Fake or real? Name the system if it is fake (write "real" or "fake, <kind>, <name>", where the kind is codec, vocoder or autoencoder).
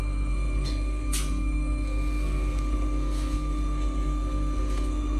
fake, codec, SNAC